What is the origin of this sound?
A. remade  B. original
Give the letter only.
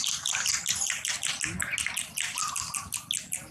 B